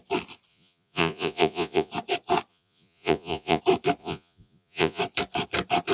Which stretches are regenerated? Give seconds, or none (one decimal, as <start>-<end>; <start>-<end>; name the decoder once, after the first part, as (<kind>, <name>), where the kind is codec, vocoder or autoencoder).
0.5-1.9 (vocoder, Vocos); 2.5-3.6; 4.0-5.0